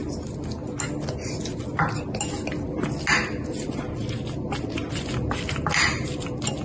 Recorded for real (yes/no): yes